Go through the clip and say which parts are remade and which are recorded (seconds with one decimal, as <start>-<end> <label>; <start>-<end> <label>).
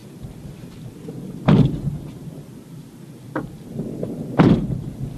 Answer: 0.0-1.7 remade; 1.7-2.8 recorded; 2.8-4.2 remade; 4.2-5.2 recorded